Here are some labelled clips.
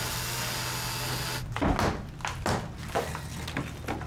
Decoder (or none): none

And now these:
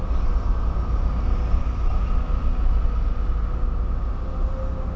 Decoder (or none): none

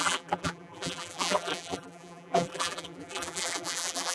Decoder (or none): vocoder, BigVGAN v2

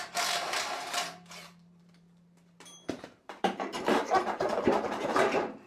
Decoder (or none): vocoder, BigVGAN v2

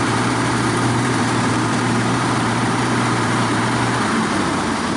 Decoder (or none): vocoder, BigVGAN v2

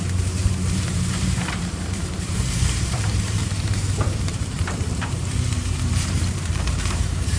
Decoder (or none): vocoder, BigVGAN v2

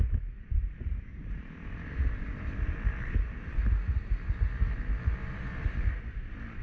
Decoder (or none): vocoder, BigVGAN v2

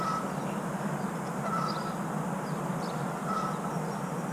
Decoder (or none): none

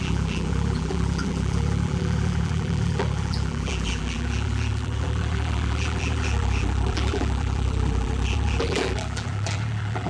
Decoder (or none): vocoder, BigVGAN v2